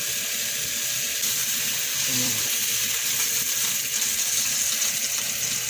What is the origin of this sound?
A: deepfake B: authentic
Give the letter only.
A